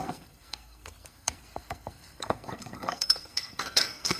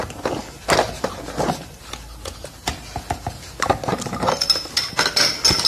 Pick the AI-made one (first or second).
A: first